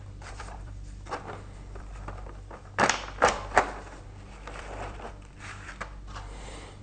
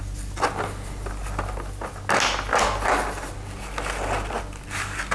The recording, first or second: second